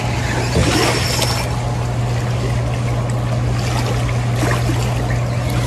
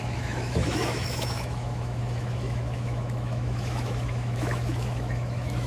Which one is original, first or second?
first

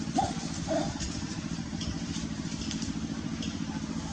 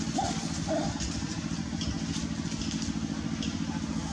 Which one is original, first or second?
second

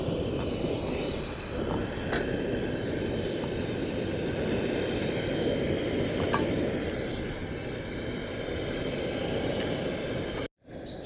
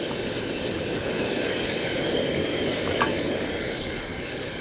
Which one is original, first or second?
first